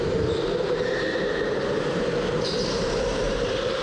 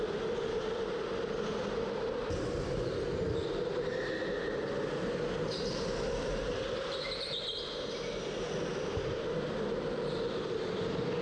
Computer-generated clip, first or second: first